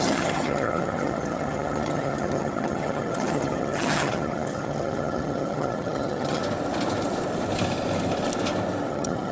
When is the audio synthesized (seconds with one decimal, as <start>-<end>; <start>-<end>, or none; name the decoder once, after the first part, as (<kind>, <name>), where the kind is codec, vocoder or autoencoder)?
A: 0.0-6.4 (vocoder, HiFi-GAN); 8.9-9.3

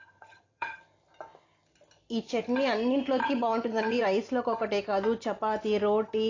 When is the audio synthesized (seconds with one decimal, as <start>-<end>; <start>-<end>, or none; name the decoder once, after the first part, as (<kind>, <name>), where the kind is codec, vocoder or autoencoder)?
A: 0.0-0.8 (vocoder, HiFi-GAN); 3.2-4.0

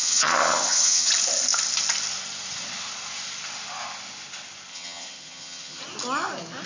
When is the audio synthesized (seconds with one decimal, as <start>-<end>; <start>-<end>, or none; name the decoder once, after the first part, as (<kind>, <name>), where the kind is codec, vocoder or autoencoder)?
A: 0.0-1.1 (vocoder, HiFi-GAN); 4.7-5.8

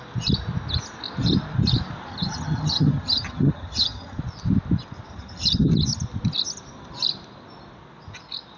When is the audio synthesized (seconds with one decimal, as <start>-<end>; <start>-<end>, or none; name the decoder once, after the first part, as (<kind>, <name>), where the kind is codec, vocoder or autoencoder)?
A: 2.1-4.2 (vocoder, HiFi-GAN); 5.1-5.7

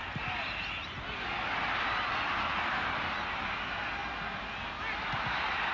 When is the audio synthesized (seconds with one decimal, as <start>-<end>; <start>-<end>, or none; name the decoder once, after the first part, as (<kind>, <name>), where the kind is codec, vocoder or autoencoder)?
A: none

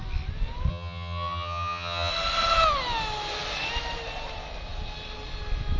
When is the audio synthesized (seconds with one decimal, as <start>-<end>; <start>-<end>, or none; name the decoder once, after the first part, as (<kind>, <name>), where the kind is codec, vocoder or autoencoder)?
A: 0.7-2.1 (vocoder, HiFi-GAN)